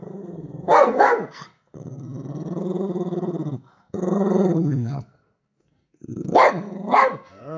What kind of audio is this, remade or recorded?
remade